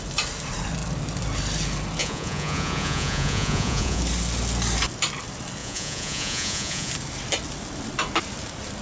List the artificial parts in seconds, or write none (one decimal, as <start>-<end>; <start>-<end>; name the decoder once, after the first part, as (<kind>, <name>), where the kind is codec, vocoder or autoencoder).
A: 2.0-4.0 (vocoder, Vocos); 5.6-6.9